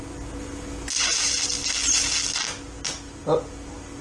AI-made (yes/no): no